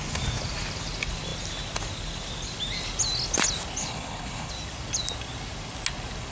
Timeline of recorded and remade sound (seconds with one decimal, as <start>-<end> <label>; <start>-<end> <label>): 0.0-3.8 recorded; 3.8-4.5 remade; 4.5-6.3 recorded